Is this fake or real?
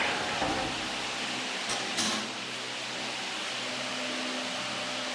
real